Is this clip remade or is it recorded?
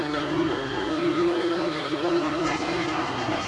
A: remade